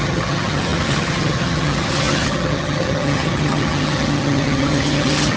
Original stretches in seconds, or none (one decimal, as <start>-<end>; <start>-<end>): none